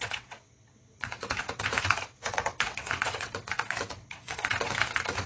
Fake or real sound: fake